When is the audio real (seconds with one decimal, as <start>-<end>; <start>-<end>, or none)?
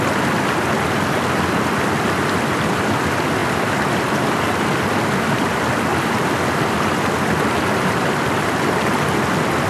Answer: 0.0-9.7